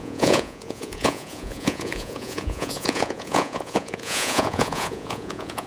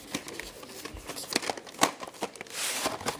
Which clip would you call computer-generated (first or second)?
first